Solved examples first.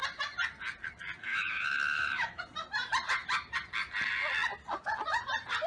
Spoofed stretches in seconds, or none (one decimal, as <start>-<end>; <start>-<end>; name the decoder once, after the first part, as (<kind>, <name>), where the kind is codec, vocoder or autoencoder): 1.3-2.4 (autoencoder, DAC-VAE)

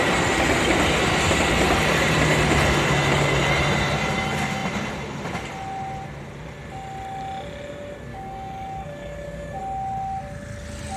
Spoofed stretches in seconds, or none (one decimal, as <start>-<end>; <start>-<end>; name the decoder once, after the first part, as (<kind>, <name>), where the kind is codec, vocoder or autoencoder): 8.1-9.6 (codec, DAC)

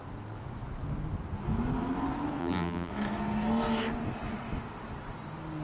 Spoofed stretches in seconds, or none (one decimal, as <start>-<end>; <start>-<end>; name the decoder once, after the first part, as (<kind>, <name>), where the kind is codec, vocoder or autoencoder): 2.4-2.9 (vocoder, BigVGAN v2)

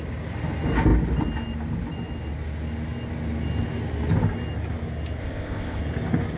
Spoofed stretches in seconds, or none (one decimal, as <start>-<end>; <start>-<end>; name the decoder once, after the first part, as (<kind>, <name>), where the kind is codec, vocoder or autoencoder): 5.2-5.8 (codec, ZipCodec)